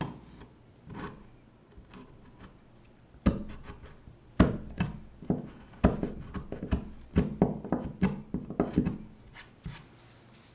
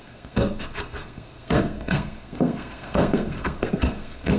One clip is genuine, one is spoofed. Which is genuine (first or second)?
first